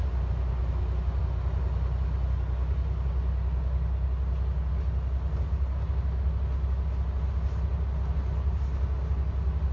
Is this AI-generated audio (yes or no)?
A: no